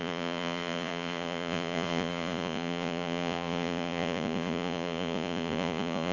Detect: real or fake fake